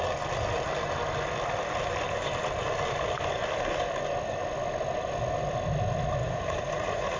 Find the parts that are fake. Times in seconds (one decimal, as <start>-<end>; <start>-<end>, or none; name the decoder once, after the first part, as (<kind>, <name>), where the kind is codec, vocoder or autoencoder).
6.2-7.2 (vocoder, Vocos)